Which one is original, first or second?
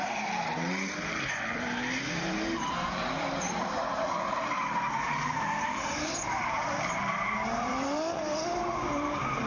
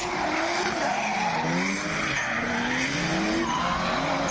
second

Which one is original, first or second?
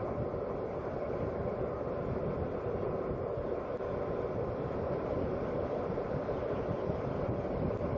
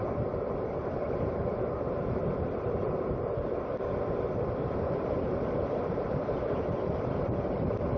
first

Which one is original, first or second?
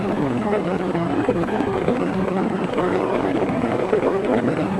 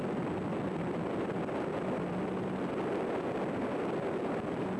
second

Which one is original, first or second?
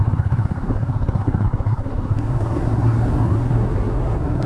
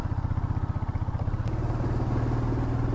second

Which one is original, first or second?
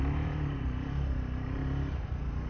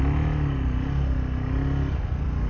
second